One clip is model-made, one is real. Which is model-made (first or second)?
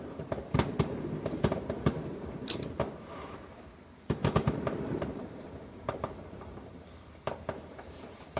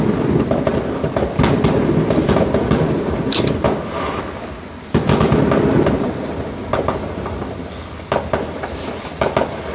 first